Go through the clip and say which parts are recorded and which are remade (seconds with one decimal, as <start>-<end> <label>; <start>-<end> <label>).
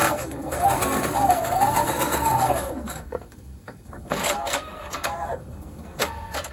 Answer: 0.0-6.5 remade